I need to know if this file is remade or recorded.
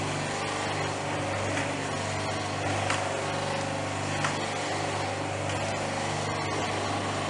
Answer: recorded